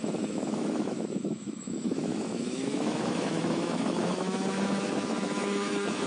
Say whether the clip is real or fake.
fake